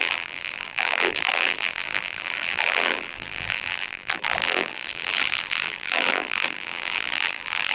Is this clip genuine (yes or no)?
no